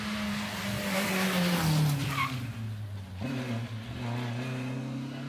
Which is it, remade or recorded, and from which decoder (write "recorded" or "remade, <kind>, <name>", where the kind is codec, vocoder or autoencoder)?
recorded